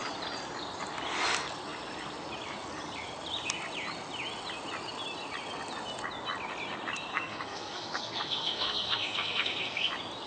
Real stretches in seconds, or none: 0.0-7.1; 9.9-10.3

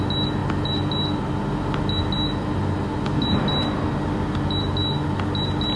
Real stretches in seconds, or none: 0.0-5.8

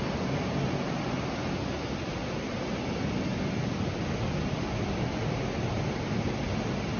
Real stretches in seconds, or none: 0.0-7.0

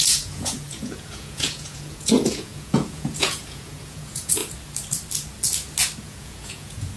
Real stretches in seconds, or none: 4.4-6.0

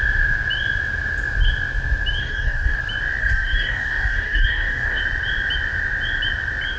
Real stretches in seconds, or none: 0.0-2.2; 2.8-3.2; 5.0-6.8

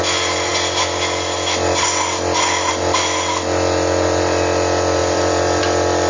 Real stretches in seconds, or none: 0.0-5.0; 5.6-6.1